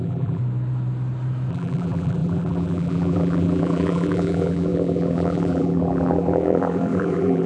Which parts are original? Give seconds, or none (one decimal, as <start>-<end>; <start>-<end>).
0.4-1.5